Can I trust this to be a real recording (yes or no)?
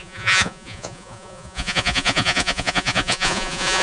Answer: no